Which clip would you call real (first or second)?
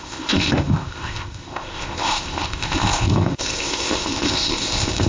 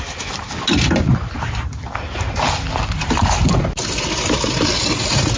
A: second